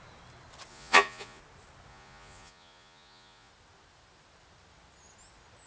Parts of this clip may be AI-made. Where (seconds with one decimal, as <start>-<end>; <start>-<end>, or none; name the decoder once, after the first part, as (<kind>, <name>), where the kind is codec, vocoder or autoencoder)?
0.7-1.4 (vocoder, Vocos); 1.9-3.5